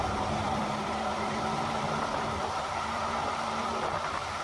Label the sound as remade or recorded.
remade